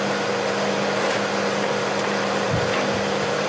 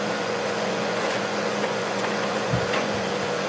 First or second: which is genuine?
first